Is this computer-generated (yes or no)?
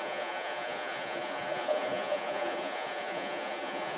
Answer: yes